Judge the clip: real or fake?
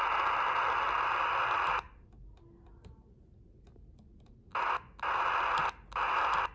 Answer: real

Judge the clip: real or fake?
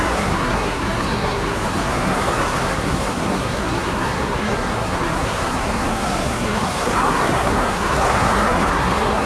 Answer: fake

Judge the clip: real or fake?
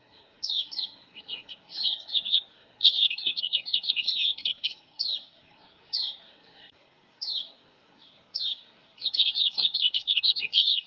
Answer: fake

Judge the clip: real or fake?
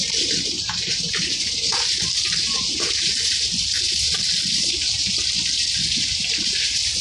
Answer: fake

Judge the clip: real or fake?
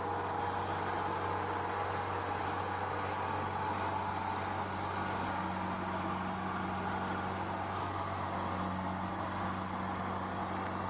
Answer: real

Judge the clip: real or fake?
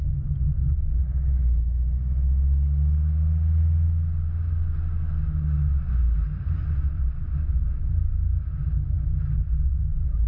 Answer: real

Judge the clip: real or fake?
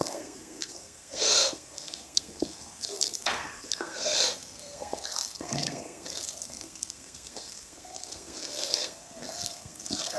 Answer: fake